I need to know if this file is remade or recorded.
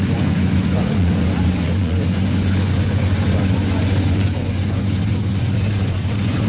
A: remade